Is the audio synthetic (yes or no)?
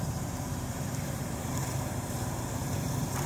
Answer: yes